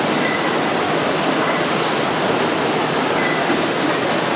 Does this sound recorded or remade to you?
recorded